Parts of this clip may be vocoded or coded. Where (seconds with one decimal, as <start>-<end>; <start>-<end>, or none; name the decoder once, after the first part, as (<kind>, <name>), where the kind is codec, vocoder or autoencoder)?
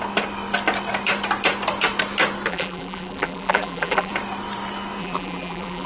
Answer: 2.5-4.1 (vocoder, BigVGAN v2); 5.0-5.9